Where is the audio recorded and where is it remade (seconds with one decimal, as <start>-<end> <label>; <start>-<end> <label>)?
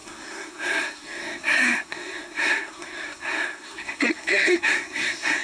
0.0-5.4 remade